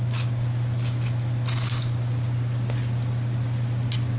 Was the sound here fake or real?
real